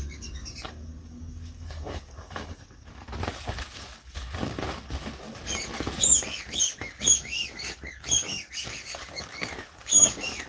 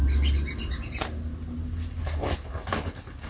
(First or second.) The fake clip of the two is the first